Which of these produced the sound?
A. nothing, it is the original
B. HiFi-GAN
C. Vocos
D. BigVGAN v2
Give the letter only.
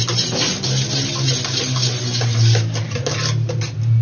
A